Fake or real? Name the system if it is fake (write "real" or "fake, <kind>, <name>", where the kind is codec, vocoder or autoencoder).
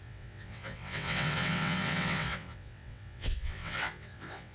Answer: fake, vocoder, WaveNeXt